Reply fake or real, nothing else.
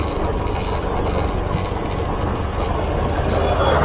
real